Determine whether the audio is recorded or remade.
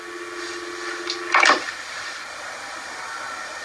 recorded